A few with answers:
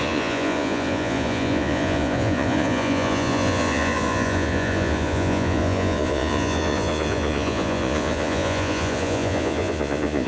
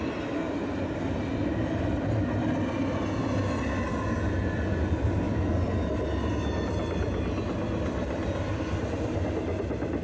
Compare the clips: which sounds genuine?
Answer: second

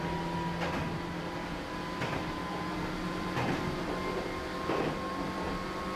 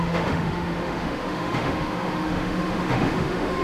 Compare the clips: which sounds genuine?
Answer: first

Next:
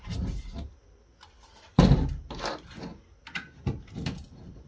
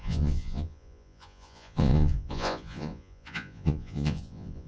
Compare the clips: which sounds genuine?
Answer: first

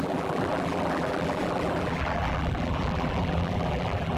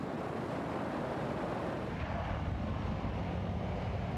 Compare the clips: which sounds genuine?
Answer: second